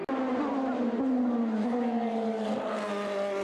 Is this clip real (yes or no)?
yes